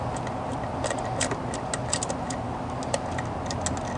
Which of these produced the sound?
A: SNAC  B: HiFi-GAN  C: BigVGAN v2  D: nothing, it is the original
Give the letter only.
D